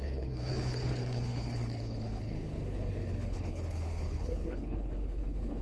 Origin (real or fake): fake